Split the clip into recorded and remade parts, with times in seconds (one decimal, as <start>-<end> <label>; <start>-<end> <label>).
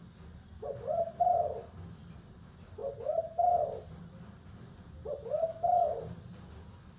0.0-7.0 recorded